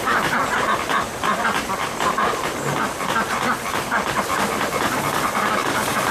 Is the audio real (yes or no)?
yes